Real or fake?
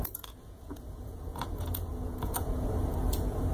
fake